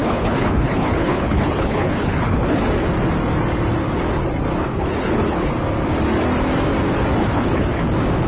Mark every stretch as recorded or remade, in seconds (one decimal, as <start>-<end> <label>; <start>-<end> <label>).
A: 0.0-2.6 remade; 2.6-4.7 recorded; 4.7-5.5 remade; 5.5-7.2 recorded; 7.2-7.8 remade; 7.8-8.3 recorded